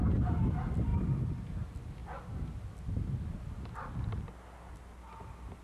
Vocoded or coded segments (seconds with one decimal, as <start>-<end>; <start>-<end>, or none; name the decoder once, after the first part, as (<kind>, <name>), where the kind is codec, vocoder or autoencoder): none